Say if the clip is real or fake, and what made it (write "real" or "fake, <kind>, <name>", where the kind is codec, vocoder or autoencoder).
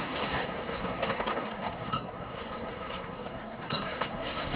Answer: fake, codec, SNAC